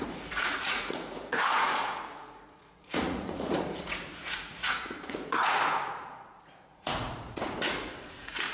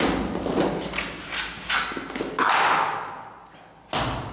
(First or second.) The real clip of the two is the second